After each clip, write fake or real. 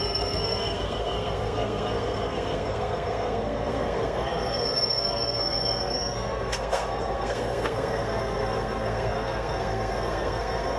fake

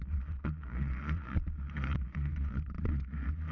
fake